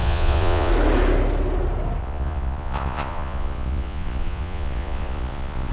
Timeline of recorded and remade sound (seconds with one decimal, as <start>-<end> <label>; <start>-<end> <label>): 0.0-0.7 remade; 0.7-2.0 recorded; 2.0-5.7 remade